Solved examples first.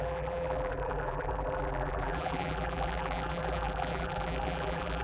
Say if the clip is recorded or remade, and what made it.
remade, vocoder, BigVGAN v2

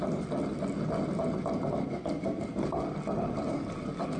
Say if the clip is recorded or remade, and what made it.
recorded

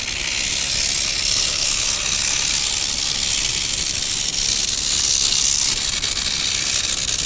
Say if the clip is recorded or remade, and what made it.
recorded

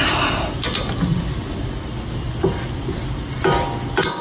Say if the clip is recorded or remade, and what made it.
recorded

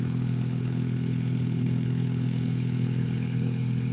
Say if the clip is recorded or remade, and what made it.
remade, codec, HILCodec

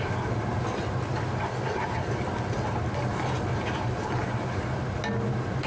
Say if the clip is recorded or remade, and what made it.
recorded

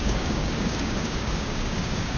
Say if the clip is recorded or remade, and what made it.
remade, codec, DAC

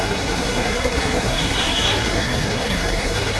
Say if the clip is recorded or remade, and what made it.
remade, codec, SNAC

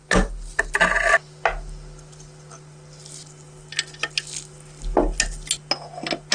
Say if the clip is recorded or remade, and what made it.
recorded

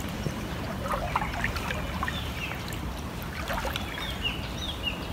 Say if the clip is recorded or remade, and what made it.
recorded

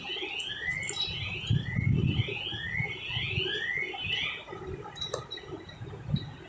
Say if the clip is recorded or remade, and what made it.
recorded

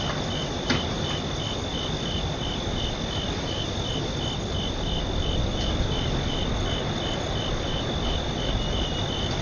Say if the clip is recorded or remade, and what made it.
recorded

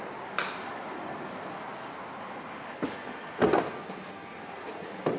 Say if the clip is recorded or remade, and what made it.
recorded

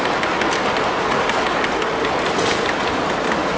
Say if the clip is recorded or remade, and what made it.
recorded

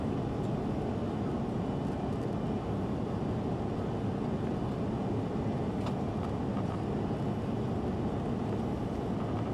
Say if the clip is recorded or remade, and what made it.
recorded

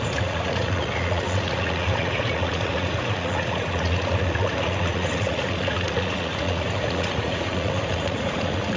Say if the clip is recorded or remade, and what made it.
remade, vocoder, Vocos